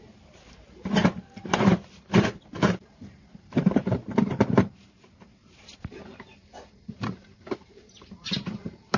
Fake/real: fake